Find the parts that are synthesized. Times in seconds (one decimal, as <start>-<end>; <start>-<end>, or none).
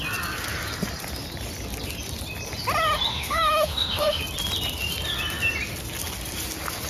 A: 3.1-4.2